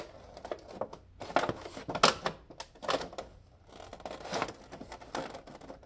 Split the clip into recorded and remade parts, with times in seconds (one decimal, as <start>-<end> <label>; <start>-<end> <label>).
0.0-5.9 recorded